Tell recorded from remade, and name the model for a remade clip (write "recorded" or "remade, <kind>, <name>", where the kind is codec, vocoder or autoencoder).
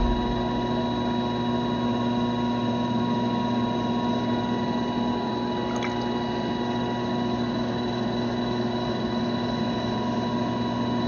recorded